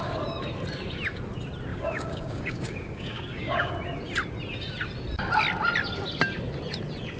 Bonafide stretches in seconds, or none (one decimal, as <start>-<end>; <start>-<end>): 0.0-1.7; 3.7-7.2